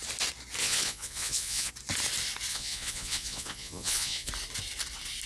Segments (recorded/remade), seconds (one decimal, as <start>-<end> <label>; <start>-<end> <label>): 0.0-0.6 recorded; 0.6-1.7 remade; 1.7-2.5 recorded; 2.5-4.3 remade; 4.3-5.3 recorded